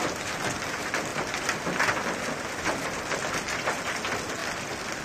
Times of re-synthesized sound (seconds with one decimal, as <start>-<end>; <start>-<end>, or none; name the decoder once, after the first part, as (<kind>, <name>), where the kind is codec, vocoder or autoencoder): 1.1-3.9 (vocoder, BigVGAN v2); 4.4-5.0